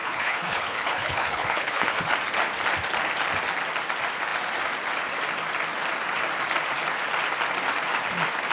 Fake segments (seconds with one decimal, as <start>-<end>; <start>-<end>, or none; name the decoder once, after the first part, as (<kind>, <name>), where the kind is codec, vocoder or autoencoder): 0.0-2.1 (codec, HILCodec)